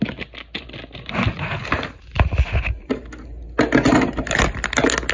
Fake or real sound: real